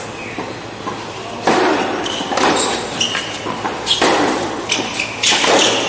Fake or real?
real